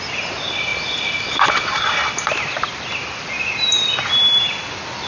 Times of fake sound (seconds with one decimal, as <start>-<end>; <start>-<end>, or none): none